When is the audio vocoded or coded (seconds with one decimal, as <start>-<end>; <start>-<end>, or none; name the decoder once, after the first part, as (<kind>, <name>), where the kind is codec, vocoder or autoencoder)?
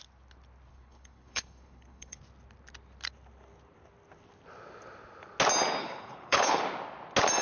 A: 0.7-2.2 (codec, HILCodec); 5.8-6.6